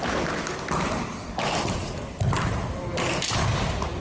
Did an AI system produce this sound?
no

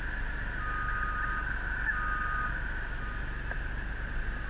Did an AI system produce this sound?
no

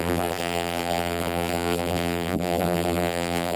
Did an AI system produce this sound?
yes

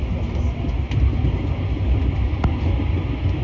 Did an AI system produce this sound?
no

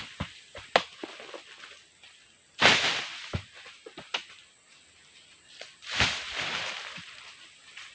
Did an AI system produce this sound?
no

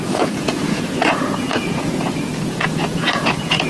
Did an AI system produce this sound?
yes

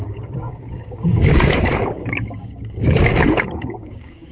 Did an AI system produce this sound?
yes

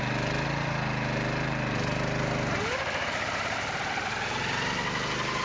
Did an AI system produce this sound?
no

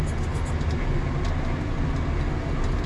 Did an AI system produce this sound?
no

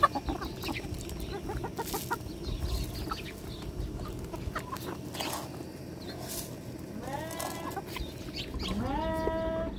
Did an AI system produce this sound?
no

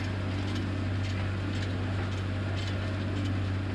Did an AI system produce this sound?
no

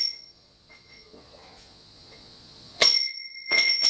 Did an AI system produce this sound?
yes